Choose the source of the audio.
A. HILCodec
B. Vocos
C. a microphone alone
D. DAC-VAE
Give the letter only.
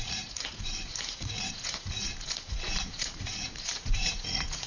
B